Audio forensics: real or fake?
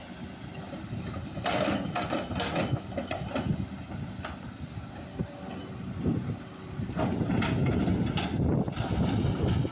real